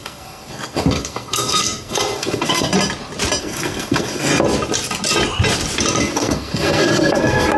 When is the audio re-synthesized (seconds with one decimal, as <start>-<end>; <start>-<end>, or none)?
0.0-2.7; 3.4-4.3; 6.0-7.6